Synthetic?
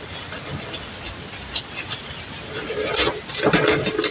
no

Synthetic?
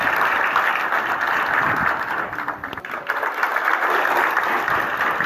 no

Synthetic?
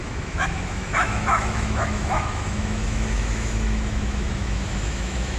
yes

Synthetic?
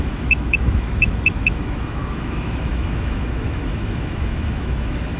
yes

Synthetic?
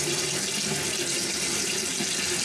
no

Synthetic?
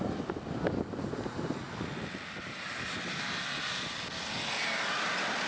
no